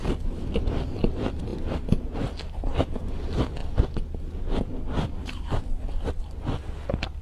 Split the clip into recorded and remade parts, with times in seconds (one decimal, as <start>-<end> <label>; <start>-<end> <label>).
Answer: 0.0-7.2 recorded